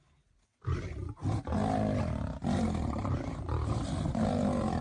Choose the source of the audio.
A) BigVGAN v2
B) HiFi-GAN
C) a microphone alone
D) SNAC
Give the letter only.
C